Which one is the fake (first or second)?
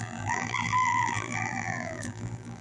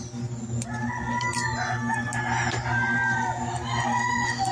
first